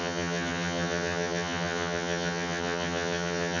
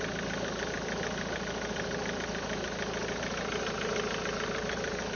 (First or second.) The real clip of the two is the second